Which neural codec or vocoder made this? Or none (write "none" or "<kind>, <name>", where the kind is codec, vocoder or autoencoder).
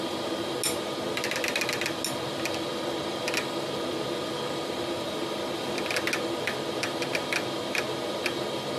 none